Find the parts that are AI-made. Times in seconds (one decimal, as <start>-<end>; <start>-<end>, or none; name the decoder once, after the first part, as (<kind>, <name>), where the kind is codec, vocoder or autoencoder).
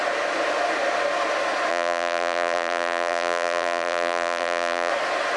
1.7-4.9 (vocoder, BigVGAN v2)